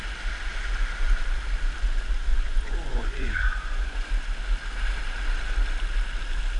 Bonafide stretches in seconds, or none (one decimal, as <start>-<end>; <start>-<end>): 0.0-2.3; 4.1-6.6